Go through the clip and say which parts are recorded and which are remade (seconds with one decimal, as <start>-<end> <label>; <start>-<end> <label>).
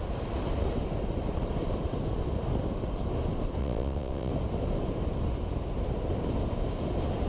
0.0-3.6 recorded; 3.6-4.3 remade; 4.3-7.3 recorded